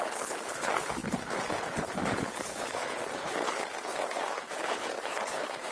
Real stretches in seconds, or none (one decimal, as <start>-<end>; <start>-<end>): none